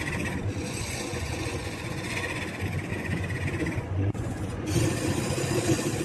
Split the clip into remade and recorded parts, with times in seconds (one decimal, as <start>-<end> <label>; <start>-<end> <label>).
0.0-0.6 recorded; 0.6-2.4 remade; 2.4-2.9 recorded; 2.9-4.8 remade; 4.8-6.0 recorded